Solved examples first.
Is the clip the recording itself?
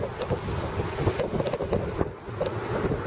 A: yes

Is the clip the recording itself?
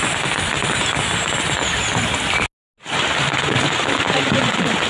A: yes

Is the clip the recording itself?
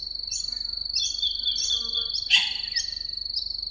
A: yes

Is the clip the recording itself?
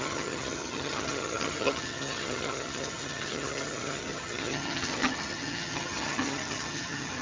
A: no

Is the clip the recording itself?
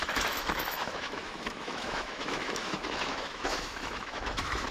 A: no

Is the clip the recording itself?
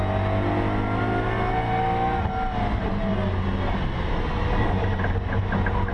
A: yes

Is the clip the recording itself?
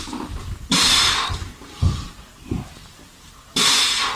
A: no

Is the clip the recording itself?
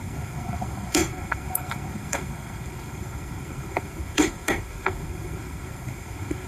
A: no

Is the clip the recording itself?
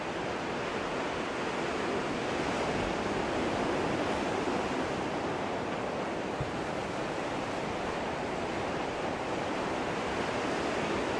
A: yes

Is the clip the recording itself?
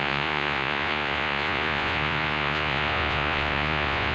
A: no